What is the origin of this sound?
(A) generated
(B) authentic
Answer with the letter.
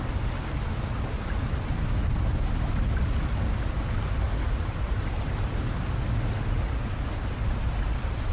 B